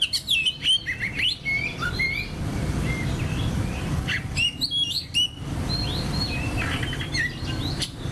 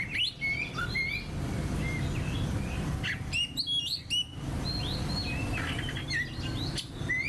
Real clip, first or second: second